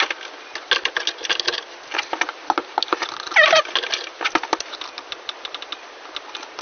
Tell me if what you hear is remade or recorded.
recorded